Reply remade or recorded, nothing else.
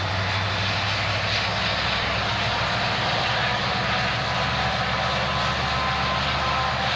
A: recorded